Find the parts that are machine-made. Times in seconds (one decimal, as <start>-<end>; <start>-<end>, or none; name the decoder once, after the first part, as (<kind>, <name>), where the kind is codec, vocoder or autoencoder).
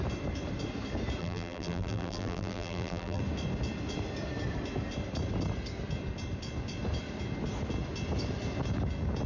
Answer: 1.2-3.2 (vocoder, BigVGAN v2)